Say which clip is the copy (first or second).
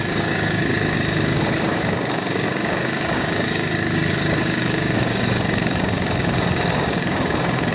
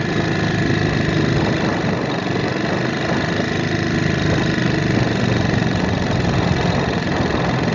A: first